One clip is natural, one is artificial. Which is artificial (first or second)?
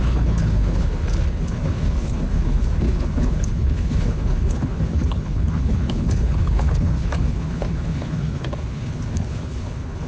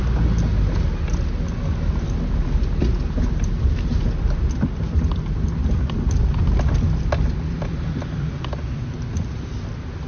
first